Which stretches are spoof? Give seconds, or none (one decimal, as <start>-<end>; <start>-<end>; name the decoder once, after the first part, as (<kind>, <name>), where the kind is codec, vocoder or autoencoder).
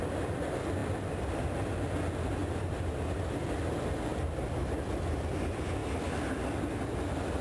2.4-3.3 (vocoder, BigVGAN v2)